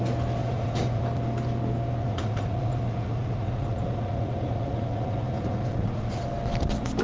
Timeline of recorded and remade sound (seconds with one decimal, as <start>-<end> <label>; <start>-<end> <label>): 0.0-0.4 recorded; 0.4-1.0 remade; 1.0-2.0 recorded; 2.0-6.2 remade; 6.2-7.0 recorded